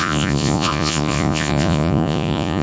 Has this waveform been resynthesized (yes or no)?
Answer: yes